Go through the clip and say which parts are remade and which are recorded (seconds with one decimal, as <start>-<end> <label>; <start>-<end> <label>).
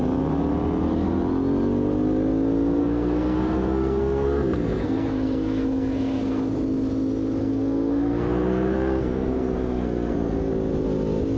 0.0-2.8 recorded; 2.8-6.5 remade; 6.5-7.4 recorded; 7.4-10.5 remade; 10.5-11.4 recorded